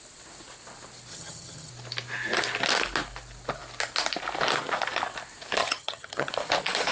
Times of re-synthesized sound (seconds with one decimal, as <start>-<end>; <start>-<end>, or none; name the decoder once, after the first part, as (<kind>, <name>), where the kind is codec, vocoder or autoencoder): 1.1-1.7 (vocoder, HiFi-GAN); 5.6-6.3